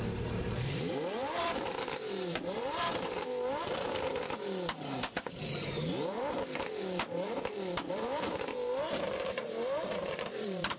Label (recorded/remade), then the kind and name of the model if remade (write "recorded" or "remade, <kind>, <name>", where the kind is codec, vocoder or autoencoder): remade, vocoder, BigVGAN v2